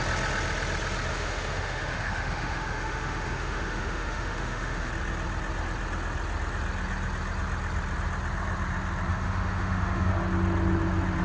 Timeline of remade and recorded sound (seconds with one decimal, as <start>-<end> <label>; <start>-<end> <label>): 0.0-1.1 recorded; 1.1-4.9 remade; 4.9-9.1 recorded; 9.1-10.1 remade; 10.1-11.2 recorded